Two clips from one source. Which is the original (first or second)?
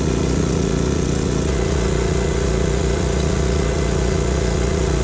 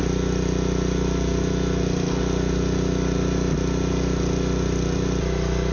second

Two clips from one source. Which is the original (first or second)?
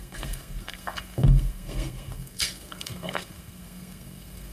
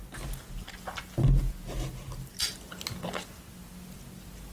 second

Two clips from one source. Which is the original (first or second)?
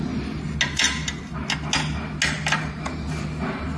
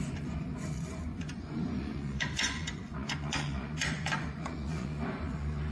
first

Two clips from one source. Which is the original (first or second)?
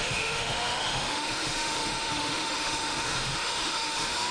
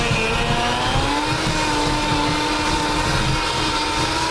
second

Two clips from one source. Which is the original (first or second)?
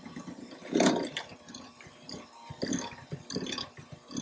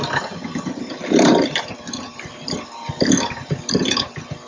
first